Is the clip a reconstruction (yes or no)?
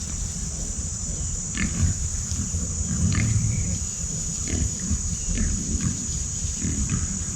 yes